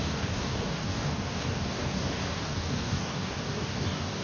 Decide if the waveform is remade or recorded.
remade